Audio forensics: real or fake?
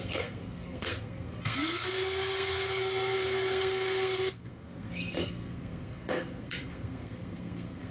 fake